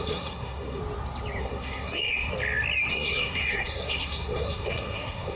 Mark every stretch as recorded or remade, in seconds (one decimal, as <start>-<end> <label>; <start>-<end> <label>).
0.0-0.8 remade; 0.8-1.4 recorded; 1.4-2.3 remade; 2.3-2.9 recorded; 2.9-5.4 remade